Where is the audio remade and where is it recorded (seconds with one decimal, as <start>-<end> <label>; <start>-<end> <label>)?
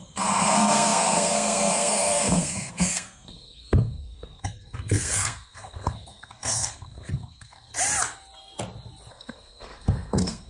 0.0-7.7 remade; 7.7-9.1 recorded; 9.1-10.5 remade